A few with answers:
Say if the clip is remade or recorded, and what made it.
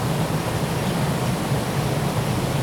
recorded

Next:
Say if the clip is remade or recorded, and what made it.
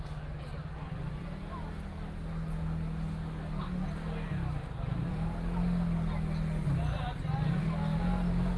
recorded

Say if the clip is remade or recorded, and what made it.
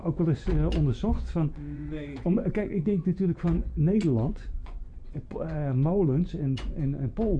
remade, vocoder, Vocos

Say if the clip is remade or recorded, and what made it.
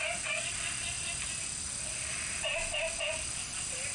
recorded